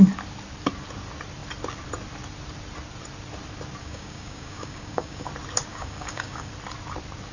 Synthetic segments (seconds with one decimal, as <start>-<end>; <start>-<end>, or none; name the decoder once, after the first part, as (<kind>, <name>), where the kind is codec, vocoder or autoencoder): 3.8-5.3 (codec, DAC); 5.7-6.5